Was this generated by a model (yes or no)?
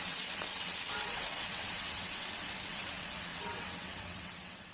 yes